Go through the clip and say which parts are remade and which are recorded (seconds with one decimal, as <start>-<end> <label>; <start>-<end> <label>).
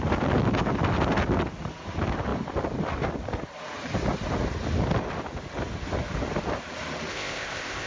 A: 0.0-7.1 recorded; 7.1-7.9 remade